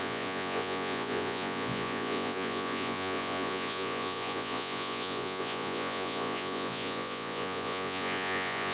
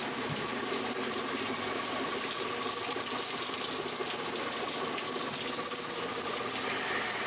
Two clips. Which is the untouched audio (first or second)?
second